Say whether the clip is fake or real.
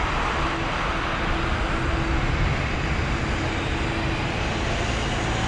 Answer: real